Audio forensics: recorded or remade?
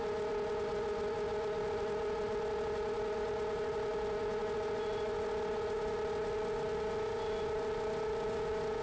recorded